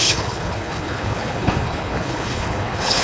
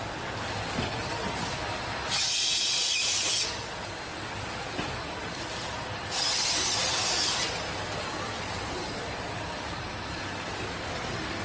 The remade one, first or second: first